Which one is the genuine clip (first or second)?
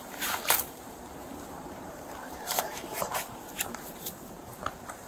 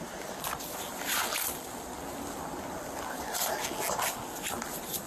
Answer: second